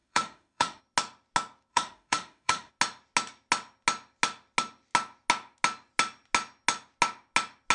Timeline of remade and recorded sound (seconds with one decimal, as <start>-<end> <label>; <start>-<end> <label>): 0.0-0.8 remade; 0.8-1.7 recorded; 1.7-2.7 remade; 2.7-7.7 recorded